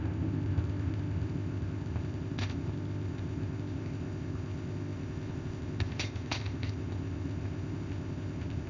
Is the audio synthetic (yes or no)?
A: yes